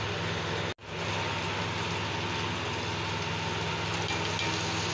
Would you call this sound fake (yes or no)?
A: no